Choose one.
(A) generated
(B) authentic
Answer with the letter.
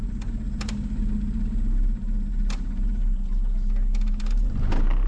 B